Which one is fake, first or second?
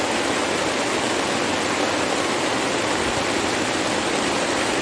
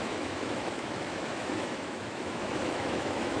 second